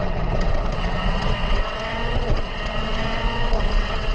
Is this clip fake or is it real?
fake